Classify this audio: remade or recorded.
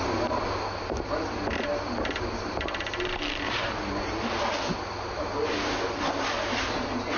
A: recorded